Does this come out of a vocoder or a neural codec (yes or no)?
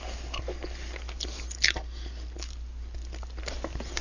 no